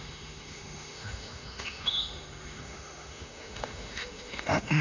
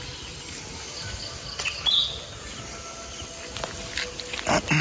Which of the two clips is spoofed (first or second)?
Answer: first